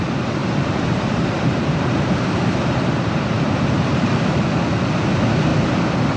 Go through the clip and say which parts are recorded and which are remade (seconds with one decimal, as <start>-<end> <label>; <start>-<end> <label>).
0.0-0.4 recorded; 0.4-4.1 remade; 4.1-6.2 recorded